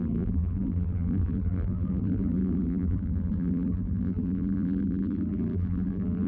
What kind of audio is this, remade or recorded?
remade